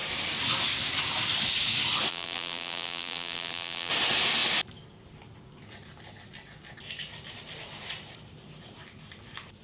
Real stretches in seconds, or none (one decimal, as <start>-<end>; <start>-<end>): 0.0-2.1; 3.9-9.6